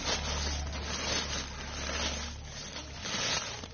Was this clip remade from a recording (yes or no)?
no